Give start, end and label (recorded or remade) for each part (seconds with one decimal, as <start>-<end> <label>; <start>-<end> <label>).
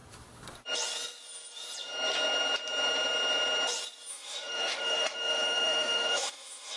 0.0-4.1 recorded; 4.1-6.8 remade